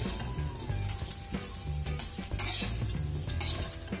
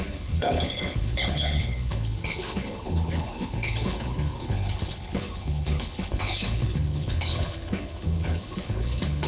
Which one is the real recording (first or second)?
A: first